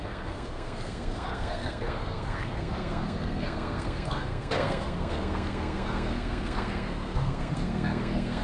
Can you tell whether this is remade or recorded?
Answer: remade